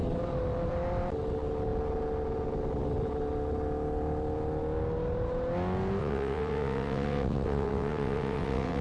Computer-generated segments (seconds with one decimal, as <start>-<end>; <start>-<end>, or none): 6.0-8.8

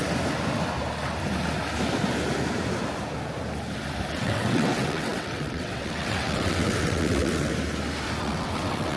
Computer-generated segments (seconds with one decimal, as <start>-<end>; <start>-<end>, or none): 4.1-7.5; 8.2-9.0

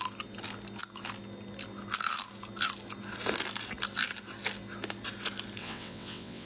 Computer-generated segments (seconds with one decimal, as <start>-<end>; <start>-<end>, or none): 5.6-6.5

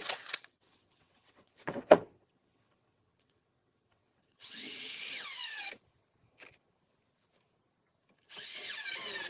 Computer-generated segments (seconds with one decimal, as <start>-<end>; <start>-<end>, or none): 0.0-5.0